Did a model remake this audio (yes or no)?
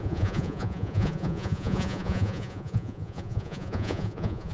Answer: yes